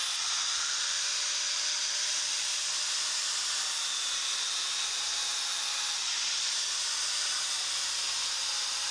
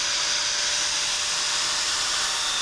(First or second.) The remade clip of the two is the first